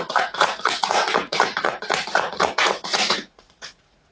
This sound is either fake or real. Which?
fake